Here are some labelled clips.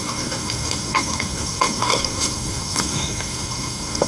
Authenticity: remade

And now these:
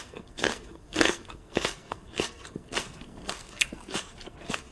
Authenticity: remade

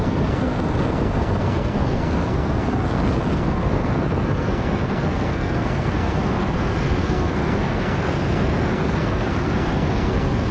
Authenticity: remade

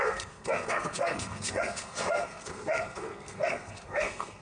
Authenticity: remade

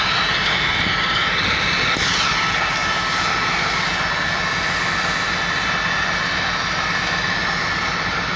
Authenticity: recorded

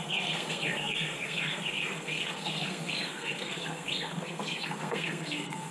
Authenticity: remade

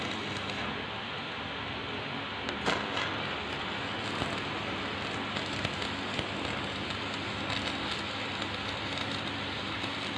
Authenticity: recorded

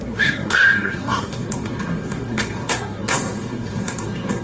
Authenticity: remade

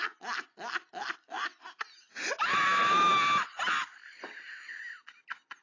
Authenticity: recorded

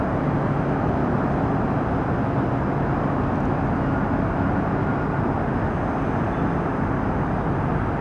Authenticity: recorded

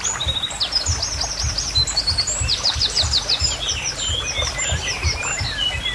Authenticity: recorded